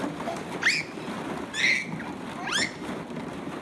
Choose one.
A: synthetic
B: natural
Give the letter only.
B